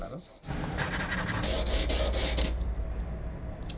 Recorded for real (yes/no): yes